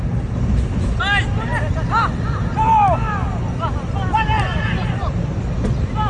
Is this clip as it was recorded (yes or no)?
yes